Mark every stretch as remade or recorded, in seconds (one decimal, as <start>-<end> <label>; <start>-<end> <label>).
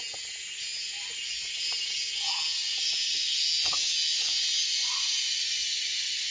0.0-6.3 recorded